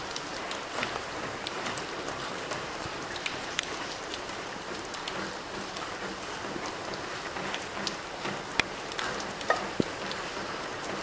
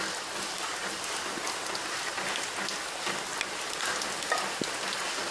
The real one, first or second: second